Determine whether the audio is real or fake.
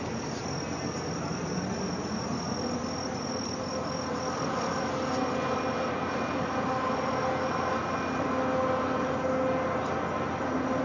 real